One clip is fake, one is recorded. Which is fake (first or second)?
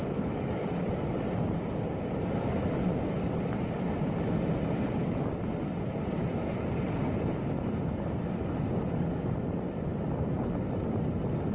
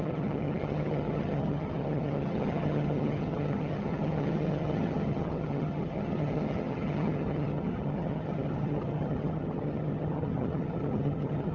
second